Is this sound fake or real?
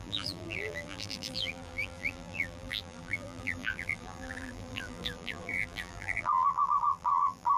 fake